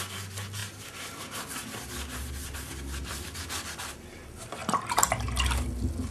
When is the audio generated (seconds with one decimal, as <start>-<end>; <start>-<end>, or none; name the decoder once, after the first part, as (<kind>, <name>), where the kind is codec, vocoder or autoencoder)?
none